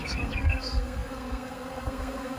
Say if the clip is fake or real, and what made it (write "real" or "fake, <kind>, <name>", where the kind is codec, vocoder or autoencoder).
fake, codec, SNAC